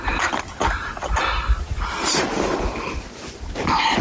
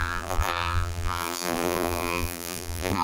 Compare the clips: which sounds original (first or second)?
first